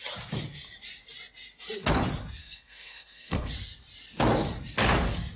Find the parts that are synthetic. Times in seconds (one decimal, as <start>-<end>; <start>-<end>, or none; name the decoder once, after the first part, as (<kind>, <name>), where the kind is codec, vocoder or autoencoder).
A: 2.4-3.5 (codec, SNAC)